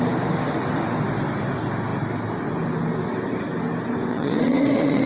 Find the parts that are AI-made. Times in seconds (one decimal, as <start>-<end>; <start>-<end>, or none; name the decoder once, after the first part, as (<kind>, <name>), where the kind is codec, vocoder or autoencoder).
4.1-5.1 (vocoder, Vocos)